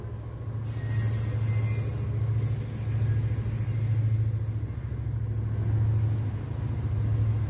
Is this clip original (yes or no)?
yes